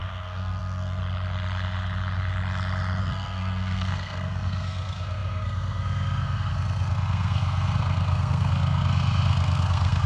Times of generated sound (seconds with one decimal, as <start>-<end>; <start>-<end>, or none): 0.0-1.0; 3.0-10.1